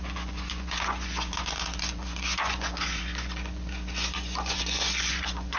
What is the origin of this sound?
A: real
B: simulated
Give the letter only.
B